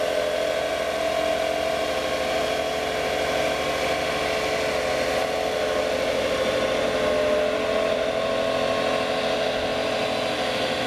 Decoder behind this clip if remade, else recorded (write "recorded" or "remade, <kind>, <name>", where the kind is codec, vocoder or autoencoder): recorded